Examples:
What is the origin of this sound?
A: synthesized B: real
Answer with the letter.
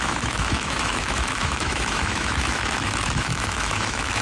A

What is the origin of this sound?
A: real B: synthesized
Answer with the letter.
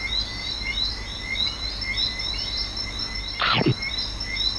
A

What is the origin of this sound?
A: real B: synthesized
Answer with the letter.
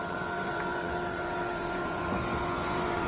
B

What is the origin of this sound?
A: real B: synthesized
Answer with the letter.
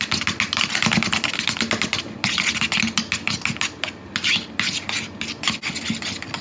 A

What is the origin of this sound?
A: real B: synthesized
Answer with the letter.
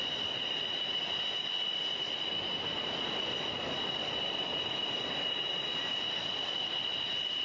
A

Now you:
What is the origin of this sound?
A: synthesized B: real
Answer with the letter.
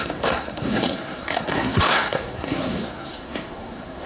A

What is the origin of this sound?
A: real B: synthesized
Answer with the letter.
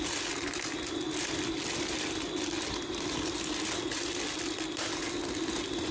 A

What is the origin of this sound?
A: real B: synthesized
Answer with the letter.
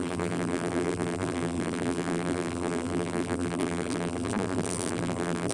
B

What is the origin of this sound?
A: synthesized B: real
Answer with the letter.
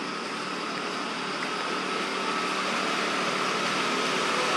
B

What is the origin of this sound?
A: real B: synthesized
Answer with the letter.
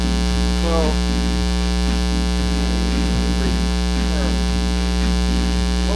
A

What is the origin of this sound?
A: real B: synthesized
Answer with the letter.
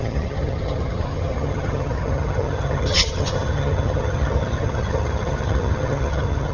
B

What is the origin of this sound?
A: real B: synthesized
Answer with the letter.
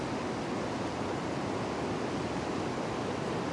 A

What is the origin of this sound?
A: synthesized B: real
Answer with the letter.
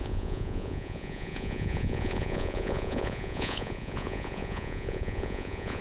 A